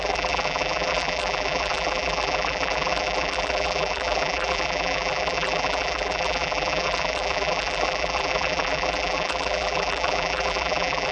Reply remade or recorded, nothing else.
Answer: remade